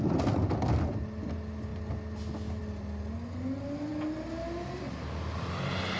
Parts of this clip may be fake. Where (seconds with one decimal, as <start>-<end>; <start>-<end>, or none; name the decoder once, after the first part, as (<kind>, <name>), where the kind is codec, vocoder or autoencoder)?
none